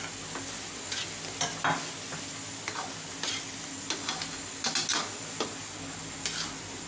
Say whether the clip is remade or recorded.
recorded